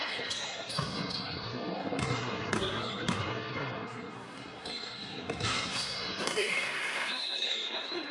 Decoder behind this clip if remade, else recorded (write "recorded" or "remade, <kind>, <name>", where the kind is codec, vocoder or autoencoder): remade, codec, SNAC